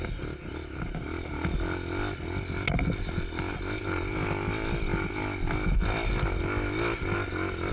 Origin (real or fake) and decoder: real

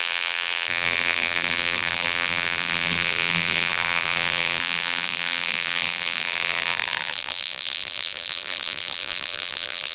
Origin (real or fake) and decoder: fake, vocoder, BigVGAN v2